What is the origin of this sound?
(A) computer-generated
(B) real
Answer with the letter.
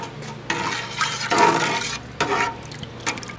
B